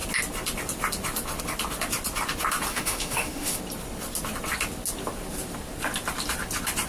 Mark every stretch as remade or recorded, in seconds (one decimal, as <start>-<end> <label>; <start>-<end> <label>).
0.0-2.7 recorded; 2.7-3.6 remade; 3.6-6.9 recorded